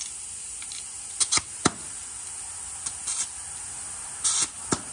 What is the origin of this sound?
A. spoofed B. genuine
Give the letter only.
B